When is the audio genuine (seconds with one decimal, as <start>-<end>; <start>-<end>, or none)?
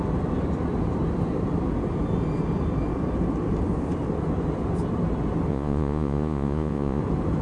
0.0-5.5; 7.0-7.4